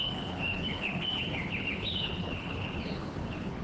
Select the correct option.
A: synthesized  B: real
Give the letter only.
A